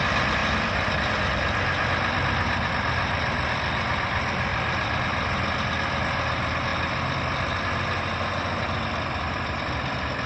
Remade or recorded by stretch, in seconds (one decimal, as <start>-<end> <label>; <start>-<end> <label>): 0.0-0.4 recorded; 0.4-2.7 remade; 2.7-4.5 recorded; 4.5-5.0 remade; 5.0-6.7 recorded; 6.7-7.2 remade; 7.2-10.3 recorded

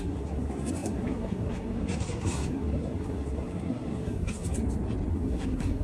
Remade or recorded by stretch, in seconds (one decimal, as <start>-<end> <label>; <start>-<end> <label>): 0.0-4.6 remade; 4.6-5.1 recorded; 5.1-5.8 remade

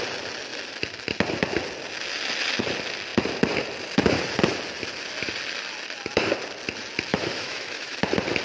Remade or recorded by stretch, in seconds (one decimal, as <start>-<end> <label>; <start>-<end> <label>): 0.0-7.1 recorded; 7.1-8.0 remade; 8.0-8.4 recorded